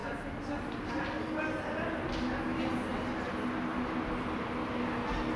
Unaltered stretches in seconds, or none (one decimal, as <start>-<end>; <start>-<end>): 0.0-5.4

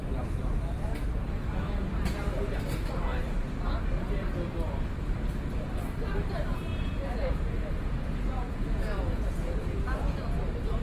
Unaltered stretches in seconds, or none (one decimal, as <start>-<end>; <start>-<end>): 0.0-6.7; 10.2-10.8

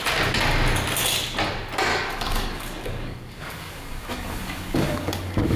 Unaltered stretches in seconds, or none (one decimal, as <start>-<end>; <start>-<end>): 0.0-1.9

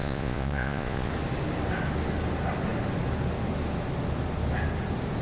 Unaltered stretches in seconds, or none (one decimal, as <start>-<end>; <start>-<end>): 1.1-5.2

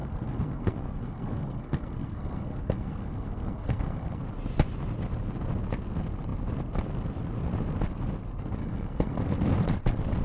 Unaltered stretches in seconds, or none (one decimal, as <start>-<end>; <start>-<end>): 4.2-8.6; 9.2-10.2